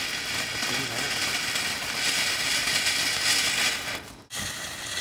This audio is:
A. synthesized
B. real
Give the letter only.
B